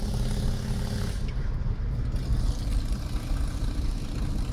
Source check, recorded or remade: recorded